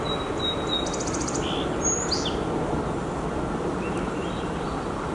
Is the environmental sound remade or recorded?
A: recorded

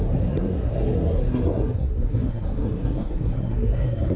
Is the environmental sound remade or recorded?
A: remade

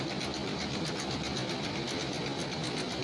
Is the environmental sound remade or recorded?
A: recorded